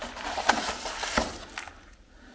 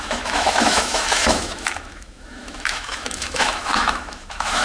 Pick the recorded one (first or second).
first